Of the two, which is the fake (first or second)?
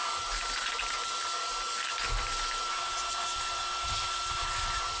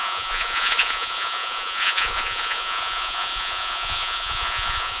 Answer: second